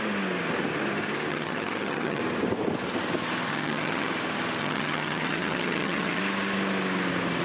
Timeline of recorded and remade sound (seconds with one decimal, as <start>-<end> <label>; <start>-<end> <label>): 0.0-1.3 recorded; 1.3-2.2 remade; 2.2-3.5 recorded; 3.5-4.1 remade; 4.1-4.6 recorded; 4.6-6.2 remade; 6.2-7.4 recorded